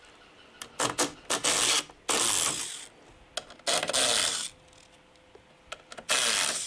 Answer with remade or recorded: recorded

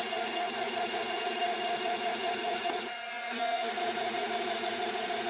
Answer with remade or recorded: remade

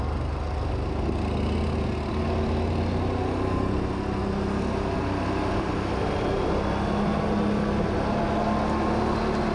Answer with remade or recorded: recorded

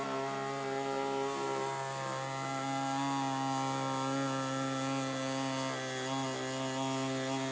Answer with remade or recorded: recorded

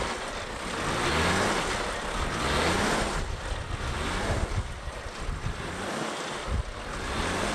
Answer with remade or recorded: recorded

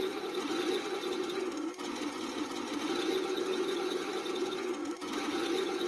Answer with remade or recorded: remade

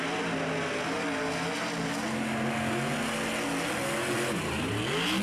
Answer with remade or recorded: recorded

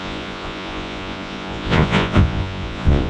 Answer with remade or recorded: remade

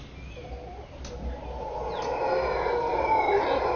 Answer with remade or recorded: recorded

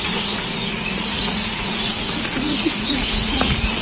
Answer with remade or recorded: remade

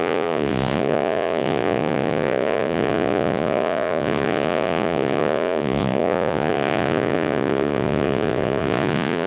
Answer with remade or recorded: remade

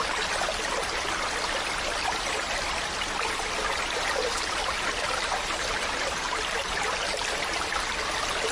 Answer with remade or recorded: recorded